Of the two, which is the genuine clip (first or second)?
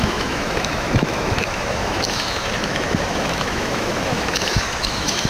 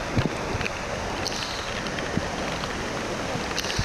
second